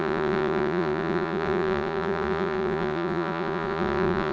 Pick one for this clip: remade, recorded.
remade